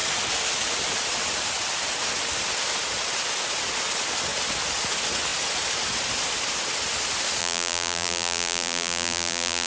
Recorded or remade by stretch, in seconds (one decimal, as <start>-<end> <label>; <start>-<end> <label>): 0.0-7.4 recorded; 7.4-9.7 remade